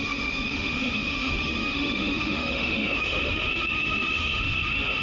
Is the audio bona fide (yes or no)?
no